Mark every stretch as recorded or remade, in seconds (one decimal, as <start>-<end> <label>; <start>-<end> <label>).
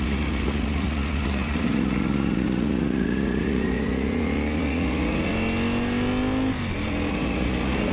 0.0-5.3 remade; 5.3-7.1 recorded; 7.1-7.9 remade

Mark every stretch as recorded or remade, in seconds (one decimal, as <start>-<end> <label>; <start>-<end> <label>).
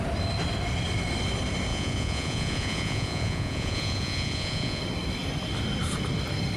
0.0-1.7 recorded; 1.7-4.8 remade; 4.8-6.6 recorded